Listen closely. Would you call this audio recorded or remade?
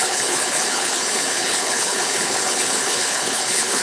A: remade